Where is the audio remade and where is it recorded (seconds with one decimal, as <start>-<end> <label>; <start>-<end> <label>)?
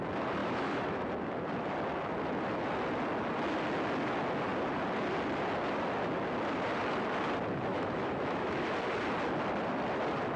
0.0-0.4 recorded; 0.4-1.1 remade; 1.1-7.7 recorded; 7.7-8.5 remade; 8.5-10.4 recorded